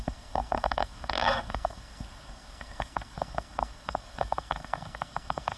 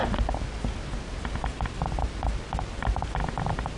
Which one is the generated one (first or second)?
first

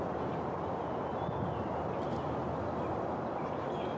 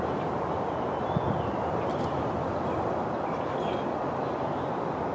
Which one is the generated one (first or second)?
second